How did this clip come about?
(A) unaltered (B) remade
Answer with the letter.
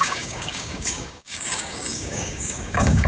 B